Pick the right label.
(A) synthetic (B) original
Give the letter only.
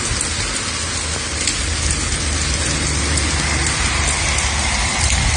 B